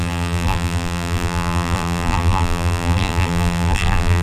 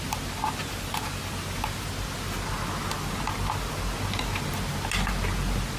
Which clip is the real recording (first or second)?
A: second